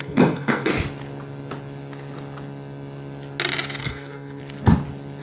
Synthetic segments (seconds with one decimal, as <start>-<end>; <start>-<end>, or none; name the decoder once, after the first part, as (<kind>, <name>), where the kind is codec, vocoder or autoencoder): 0.0-0.7 (codec, SNAC); 3.8-4.4